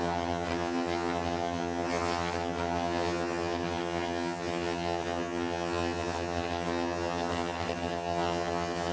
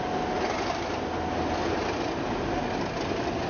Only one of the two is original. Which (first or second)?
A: second